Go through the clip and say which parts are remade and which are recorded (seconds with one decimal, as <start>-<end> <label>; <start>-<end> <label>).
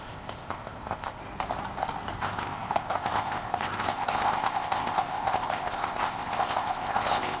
0.0-1.2 remade; 1.2-2.2 recorded; 2.2-7.4 remade